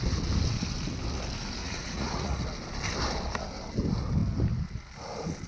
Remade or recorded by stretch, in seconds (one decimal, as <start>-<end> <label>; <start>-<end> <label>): 0.0-1.6 recorded; 1.6-2.4 remade; 2.4-5.5 recorded